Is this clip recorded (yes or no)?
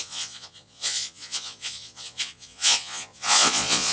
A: no